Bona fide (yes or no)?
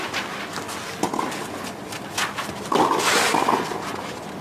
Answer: yes